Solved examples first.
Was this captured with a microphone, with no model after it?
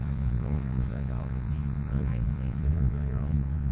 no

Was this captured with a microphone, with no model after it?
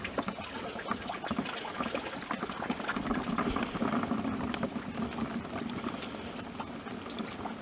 yes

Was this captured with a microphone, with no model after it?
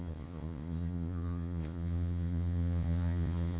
no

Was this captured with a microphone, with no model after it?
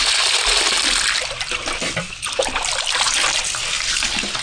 yes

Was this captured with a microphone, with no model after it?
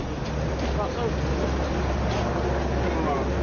yes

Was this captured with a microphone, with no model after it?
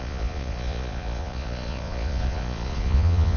no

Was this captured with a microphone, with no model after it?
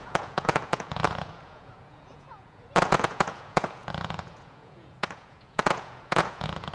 no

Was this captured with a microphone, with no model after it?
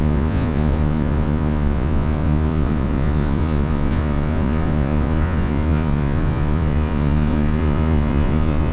no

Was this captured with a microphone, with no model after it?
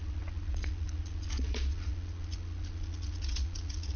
no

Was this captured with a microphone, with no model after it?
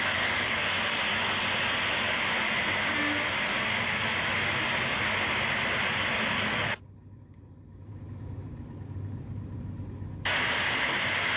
yes